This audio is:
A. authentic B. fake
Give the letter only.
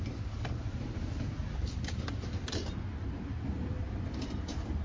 B